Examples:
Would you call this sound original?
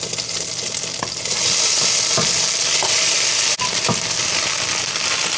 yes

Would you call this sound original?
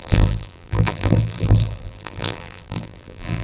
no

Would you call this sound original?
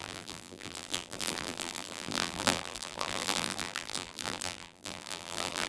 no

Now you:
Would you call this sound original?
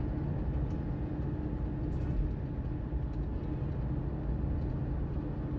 yes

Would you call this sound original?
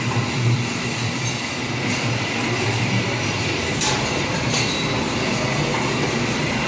no